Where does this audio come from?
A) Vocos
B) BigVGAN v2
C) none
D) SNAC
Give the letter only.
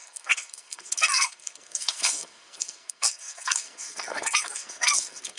D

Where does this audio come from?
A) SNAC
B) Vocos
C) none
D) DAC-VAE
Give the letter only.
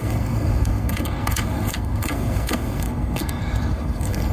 A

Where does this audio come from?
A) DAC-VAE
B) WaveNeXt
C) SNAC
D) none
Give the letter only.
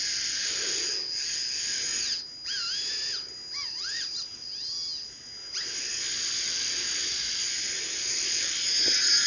D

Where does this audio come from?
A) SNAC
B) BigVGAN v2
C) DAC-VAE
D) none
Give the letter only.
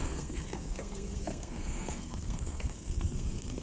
A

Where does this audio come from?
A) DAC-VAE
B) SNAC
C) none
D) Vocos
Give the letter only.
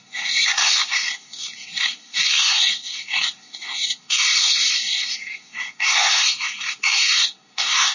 B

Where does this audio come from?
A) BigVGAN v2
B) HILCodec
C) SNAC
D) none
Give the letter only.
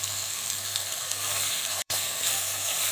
C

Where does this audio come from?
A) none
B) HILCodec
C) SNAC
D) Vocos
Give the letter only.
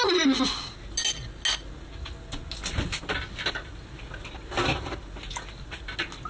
A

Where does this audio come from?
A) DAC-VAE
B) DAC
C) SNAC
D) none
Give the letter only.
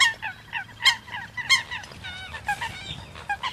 D